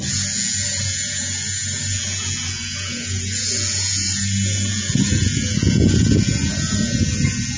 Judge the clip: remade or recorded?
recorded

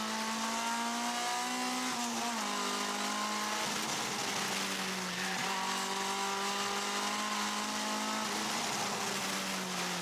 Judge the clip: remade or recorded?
recorded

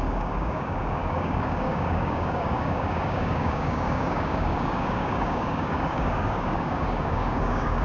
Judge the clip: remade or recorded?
remade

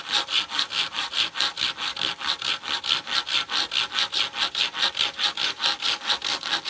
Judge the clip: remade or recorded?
recorded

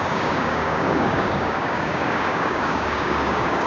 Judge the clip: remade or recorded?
remade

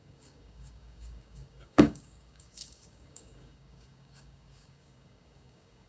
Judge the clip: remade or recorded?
remade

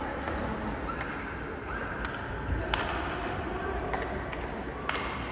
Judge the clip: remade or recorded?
recorded